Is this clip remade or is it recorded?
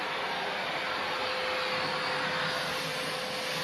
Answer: recorded